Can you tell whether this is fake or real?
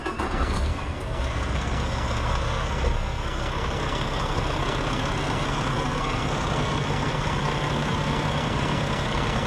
fake